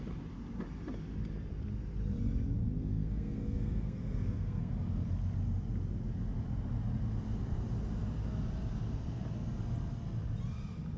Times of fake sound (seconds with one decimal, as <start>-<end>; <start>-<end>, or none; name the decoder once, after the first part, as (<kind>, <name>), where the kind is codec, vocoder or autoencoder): 2.8-4.7 (codec, SNAC)